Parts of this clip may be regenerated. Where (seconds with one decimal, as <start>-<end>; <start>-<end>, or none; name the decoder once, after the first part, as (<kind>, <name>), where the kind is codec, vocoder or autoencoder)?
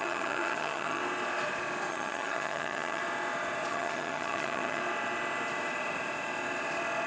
0.0-1.0 (vocoder, HiFi-GAN); 1.9-3.0; 3.7-4.8